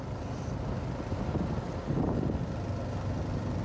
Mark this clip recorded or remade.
recorded